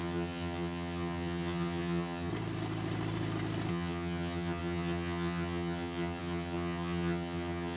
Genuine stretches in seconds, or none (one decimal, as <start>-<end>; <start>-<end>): 2.3-3.7